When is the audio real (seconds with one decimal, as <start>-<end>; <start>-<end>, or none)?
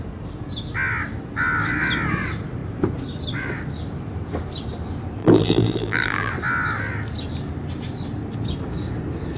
0.0-5.2; 6.3-9.4